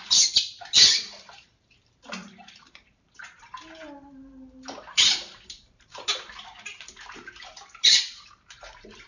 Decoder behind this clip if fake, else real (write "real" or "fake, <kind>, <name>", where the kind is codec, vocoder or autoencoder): fake, vocoder, BigVGAN v2